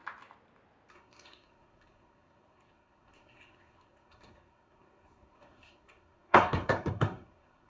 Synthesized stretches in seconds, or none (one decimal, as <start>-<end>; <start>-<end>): 0.9-7.7